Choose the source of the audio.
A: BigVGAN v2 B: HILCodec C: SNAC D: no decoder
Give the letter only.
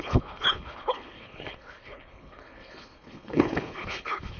B